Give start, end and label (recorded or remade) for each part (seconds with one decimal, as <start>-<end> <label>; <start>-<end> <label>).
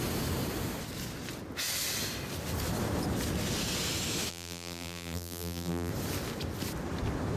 0.0-4.3 recorded; 4.3-5.9 remade; 5.9-7.4 recorded